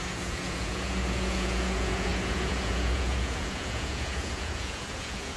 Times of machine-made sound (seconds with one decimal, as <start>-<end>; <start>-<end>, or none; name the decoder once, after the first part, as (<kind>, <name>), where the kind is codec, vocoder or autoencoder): 0.0-5.4 (vocoder, Vocos)